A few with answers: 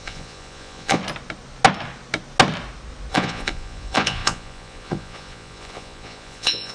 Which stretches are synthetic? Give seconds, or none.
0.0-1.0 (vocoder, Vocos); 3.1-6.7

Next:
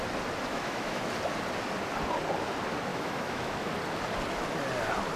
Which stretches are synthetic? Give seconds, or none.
0.5-1.1 (autoencoder, DAC-VAE); 2.9-3.7

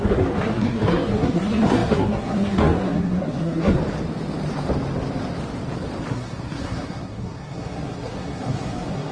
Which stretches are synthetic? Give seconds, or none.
0.0-3.8 (codec, SNAC); 6.1-9.1

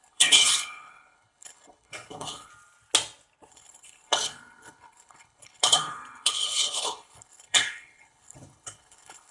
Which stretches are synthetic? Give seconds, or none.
0.0-2.5 (codec, HILCodec); 3.5-9.3

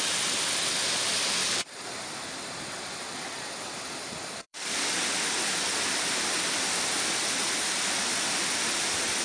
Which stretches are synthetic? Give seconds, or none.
1.4-5.0 (vocoder, BigVGAN v2)

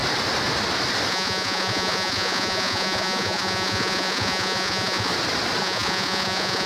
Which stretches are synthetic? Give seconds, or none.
1.1-5.1 (vocoder, Vocos); 5.6-6.7

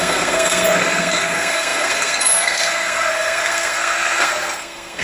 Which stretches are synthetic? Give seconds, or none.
0.0-5.0 (codec, SNAC)

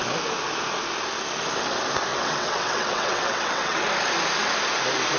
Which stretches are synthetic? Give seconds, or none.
2.1-3.9 (vocoder, WaveNeXt)